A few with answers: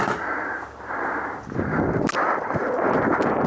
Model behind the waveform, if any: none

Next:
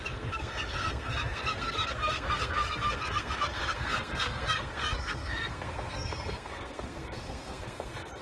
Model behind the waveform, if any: codec, SNAC